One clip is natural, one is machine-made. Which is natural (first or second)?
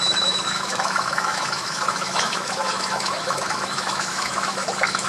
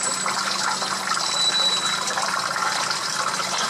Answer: second